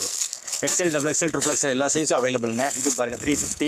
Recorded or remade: remade